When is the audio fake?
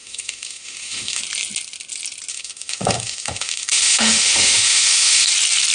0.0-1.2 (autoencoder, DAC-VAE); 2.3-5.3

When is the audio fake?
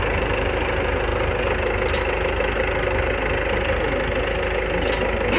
none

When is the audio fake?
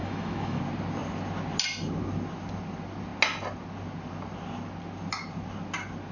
0.0-0.6 (autoencoder, DAC-VAE)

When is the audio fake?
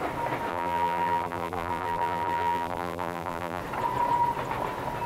0.5-3.6 (vocoder, BigVGAN v2)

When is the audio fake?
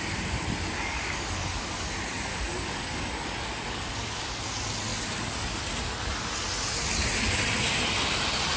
0.9-1.9 (codec, DAC); 2.3-4.4